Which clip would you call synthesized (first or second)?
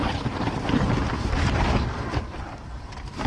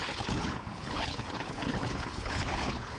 second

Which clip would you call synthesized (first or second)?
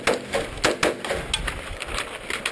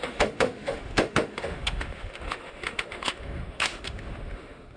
second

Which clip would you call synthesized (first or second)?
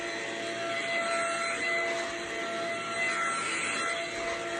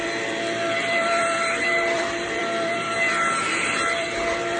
second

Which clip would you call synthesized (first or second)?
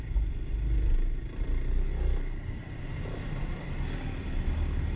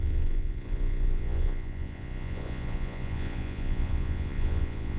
second